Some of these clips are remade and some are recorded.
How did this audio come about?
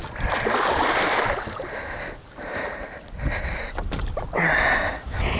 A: recorded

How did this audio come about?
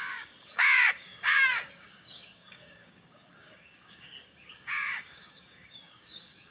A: remade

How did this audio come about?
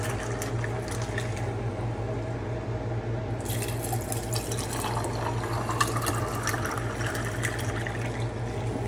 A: recorded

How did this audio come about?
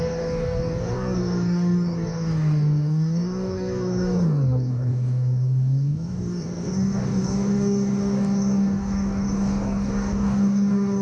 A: remade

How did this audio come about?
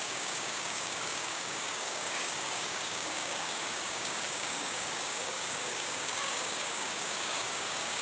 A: remade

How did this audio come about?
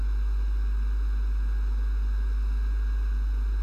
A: recorded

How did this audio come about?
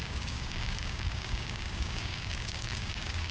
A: remade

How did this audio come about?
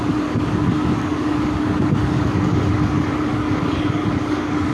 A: remade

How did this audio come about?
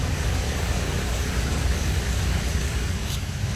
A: remade